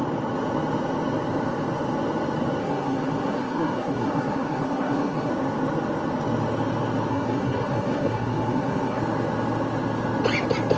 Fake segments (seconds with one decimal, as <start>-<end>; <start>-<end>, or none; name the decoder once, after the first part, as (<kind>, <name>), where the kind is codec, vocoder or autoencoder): 2.6-5.3 (codec, SNAC); 7.1-9.0